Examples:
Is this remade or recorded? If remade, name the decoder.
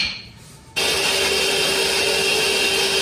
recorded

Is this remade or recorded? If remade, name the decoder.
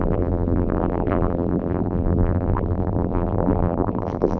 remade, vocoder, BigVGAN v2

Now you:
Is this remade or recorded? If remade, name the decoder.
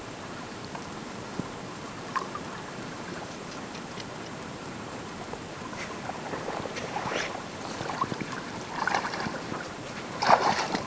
remade, vocoder, BigVGAN v2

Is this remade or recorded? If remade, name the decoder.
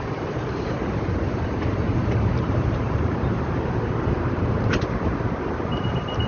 remade, vocoder, BigVGAN v2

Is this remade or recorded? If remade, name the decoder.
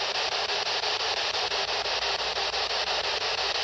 recorded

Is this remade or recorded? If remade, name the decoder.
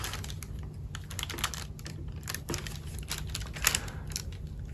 recorded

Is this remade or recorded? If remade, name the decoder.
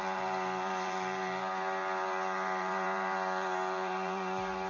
remade, vocoder, BigVGAN v2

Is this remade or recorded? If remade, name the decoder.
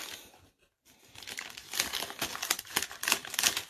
recorded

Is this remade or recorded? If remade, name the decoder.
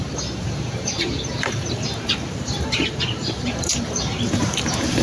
remade, vocoder, BigVGAN v2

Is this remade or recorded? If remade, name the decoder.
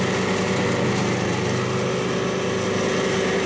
recorded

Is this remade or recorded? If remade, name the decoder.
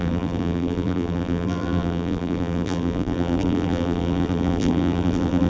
remade, vocoder, BigVGAN v2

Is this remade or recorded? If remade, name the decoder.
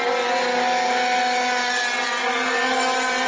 recorded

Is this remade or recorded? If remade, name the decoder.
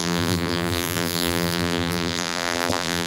remade, vocoder, BigVGAN v2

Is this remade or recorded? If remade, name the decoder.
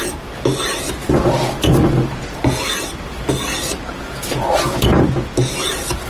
recorded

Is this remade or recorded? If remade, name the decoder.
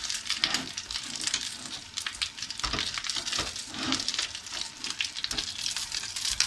remade, vocoder, BigVGAN v2